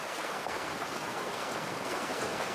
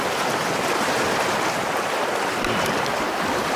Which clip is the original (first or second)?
second